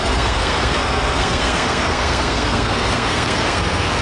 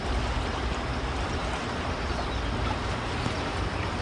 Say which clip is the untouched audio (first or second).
second